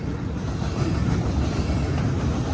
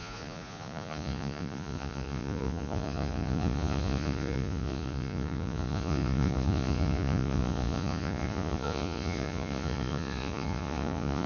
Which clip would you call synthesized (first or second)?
second